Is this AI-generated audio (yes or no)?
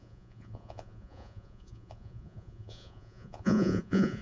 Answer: yes